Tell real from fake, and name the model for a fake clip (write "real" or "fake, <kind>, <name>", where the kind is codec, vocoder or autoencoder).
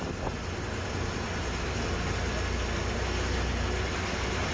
real